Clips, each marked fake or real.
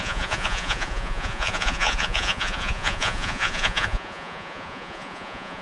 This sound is fake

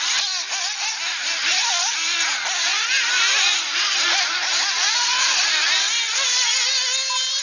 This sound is real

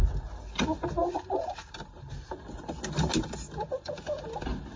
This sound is real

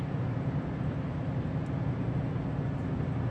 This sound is real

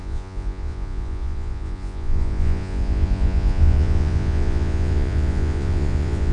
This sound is fake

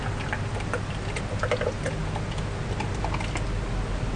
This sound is real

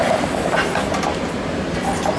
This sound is real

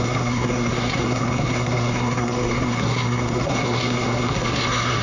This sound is fake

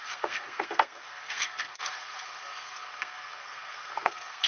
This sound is fake